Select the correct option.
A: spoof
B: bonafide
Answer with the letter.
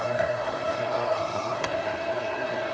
A